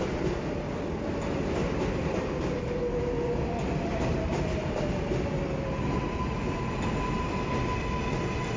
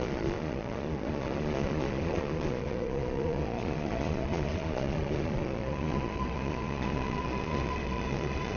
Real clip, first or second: first